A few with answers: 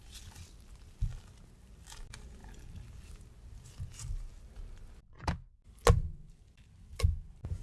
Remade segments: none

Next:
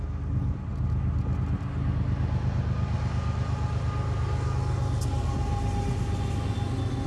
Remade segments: none

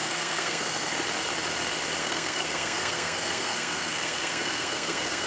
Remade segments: 0.0-0.9 (codec, SNAC); 2.0-5.3

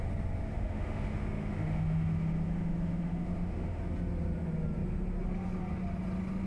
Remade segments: 0.5-3.8 (autoencoder, DAC-VAE)

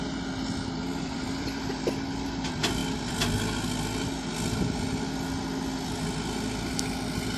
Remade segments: 0.9-1.6 (vocoder, BigVGAN v2)